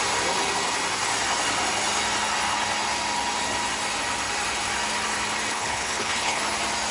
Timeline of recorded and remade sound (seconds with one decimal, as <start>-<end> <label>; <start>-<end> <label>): 0.0-5.5 recorded; 5.5-6.4 remade; 6.4-6.9 recorded